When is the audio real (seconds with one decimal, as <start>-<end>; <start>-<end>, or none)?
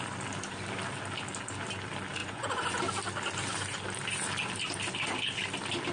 0.0-2.2; 2.8-5.9